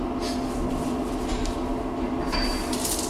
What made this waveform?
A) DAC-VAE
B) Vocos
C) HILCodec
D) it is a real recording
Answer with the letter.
D